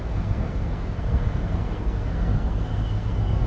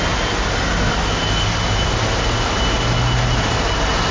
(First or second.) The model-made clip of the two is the first